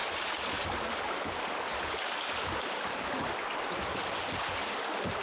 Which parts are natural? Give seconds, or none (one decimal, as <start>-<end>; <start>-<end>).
0.0-1.7; 4.8-5.2